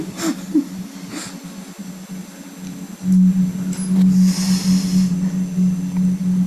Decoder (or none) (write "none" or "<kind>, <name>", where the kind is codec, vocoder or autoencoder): none